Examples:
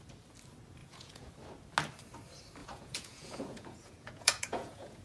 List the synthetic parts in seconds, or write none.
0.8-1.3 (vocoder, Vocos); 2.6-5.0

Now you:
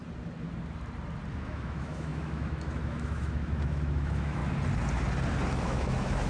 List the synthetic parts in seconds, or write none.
1.3-4.4 (autoencoder, DAC-VAE); 5.6-6.3

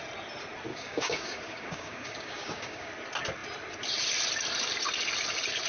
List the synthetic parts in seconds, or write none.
0.7-2.9 (codec, DAC)

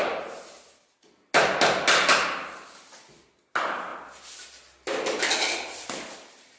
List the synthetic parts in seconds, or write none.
none

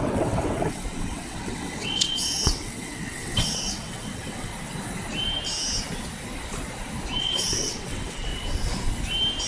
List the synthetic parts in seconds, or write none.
0.0-4.5 (vocoder, WaveNeXt); 7.2-8.3